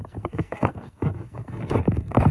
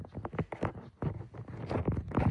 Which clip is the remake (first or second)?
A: first